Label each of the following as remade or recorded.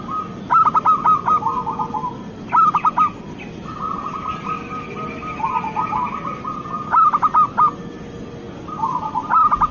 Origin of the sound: recorded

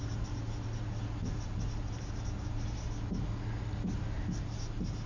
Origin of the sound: recorded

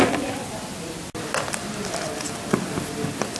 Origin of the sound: recorded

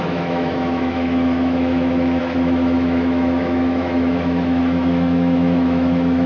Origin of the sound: remade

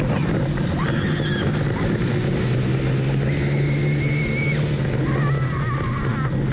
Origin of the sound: recorded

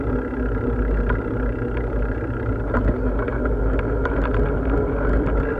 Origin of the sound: recorded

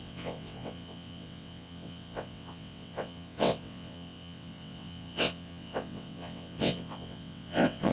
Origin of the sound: remade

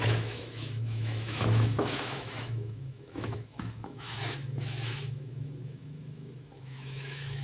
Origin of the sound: remade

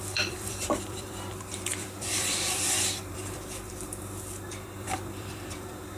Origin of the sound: remade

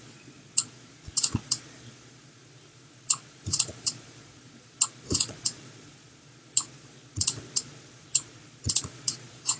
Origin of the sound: remade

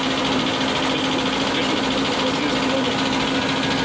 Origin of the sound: recorded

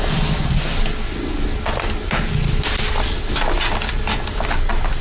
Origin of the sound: recorded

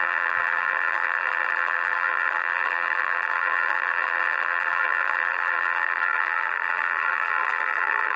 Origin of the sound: remade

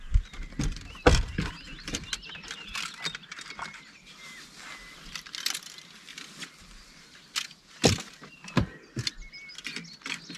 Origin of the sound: recorded